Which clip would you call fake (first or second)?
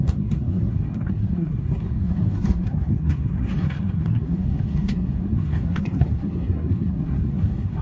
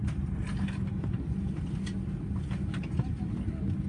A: first